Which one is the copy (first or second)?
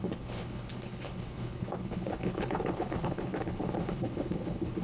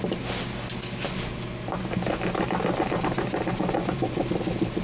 first